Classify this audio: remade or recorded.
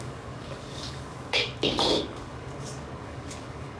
remade